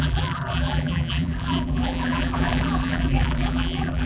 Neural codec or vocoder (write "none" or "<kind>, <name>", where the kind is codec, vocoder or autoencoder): vocoder, BigVGAN v2